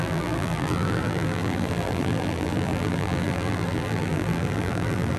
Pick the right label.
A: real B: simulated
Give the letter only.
B